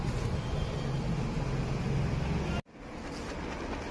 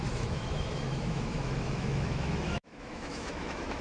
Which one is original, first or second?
first